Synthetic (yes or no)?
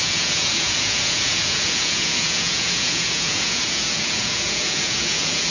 yes